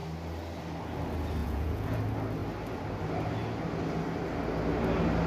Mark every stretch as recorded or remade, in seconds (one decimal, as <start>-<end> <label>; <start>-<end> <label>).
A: 0.0-1.4 recorded; 1.4-2.0 remade; 2.0-5.3 recorded